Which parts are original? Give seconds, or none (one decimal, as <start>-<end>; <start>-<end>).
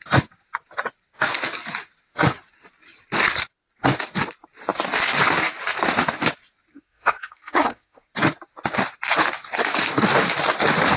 0.0-6.7; 8.1-11.0